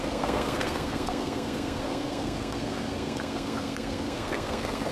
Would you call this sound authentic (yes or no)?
no